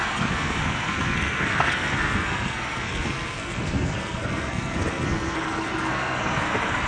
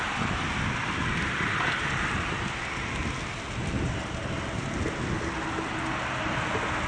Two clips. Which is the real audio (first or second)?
second